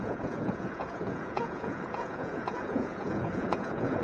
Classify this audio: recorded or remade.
remade